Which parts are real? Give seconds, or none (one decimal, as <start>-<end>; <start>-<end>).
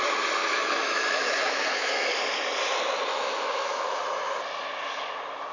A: 0.0-0.4; 2.2-3.1; 4.0-5.5